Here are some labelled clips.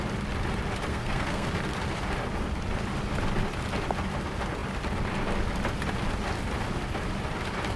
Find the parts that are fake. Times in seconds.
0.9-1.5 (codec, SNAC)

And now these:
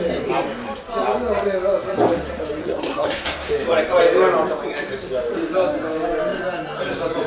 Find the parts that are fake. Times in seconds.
2.6-3.5 (codec, SNAC)

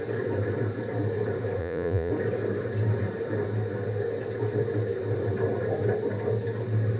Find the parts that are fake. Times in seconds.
1.6-2.1 (vocoder, Vocos)

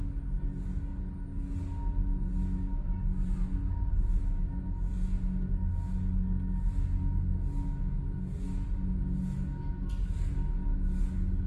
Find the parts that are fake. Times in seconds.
none

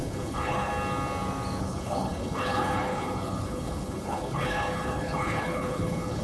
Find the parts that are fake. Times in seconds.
0.0-0.7 (codec, HILCodec); 1.6-6.2

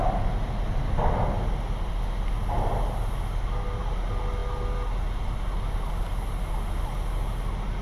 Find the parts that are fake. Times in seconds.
none